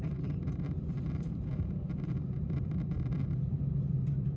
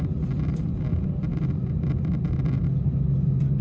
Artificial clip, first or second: first